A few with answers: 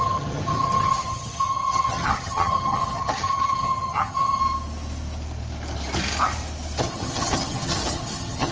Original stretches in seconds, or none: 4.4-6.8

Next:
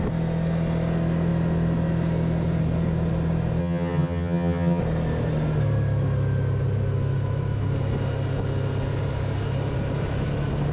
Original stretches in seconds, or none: 0.0-3.6; 4.8-10.7

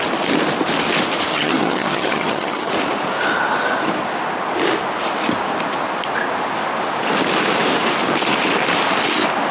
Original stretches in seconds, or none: 0.0-1.3; 2.7-9.5

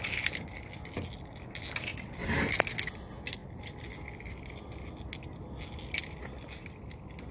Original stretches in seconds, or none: 0.0-7.3

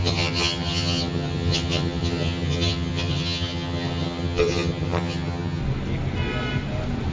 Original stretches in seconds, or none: 5.6-7.1